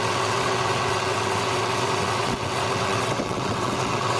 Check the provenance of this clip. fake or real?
fake